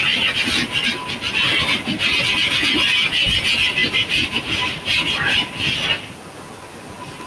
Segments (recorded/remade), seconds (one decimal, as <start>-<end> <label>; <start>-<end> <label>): 0.0-3.8 recorded; 3.8-5.5 remade; 5.5-7.3 recorded